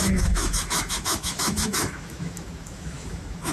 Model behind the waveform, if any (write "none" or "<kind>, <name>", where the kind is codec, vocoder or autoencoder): autoencoder, DAC-VAE